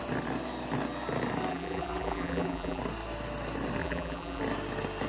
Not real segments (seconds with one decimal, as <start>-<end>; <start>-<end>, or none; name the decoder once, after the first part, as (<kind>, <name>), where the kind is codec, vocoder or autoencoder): 1.5-2.8 (vocoder, BigVGAN v2); 3.8-4.4